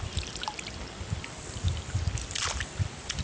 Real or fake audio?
fake